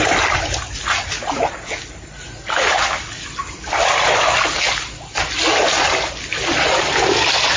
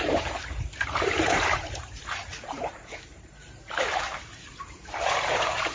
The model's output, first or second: second